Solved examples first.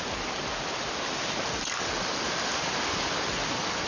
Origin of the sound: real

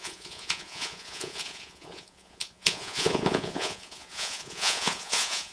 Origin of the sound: fake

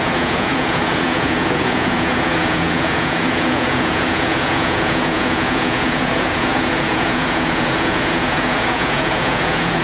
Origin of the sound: fake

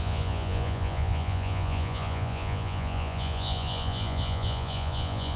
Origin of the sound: fake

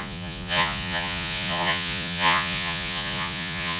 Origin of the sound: fake